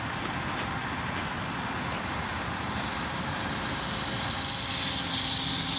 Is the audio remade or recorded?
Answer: recorded